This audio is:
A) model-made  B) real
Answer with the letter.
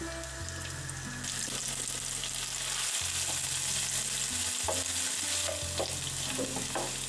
B